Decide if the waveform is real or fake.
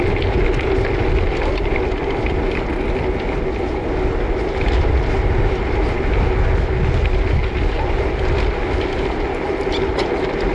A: real